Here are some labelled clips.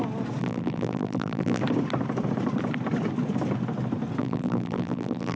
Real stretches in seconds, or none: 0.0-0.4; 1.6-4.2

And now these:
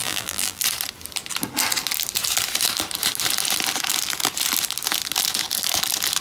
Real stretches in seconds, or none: 0.6-6.2

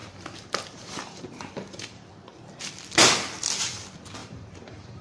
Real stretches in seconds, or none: 2.1-4.2